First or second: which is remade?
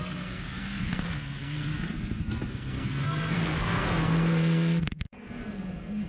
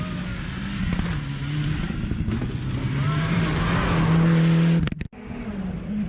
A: first